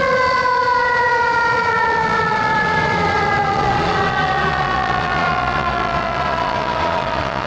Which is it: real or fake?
fake